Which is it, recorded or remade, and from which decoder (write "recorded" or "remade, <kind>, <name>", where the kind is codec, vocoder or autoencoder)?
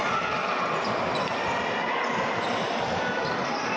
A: recorded